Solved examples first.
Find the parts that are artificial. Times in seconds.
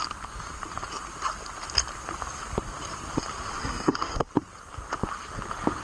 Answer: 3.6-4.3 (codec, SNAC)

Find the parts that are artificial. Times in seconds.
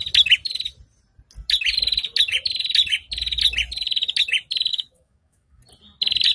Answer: 4.7-5.6 (codec, DAC)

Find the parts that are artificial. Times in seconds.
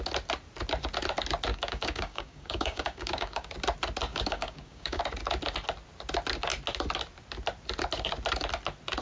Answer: 1.5-3.5 (codec, DAC); 4.1-5.0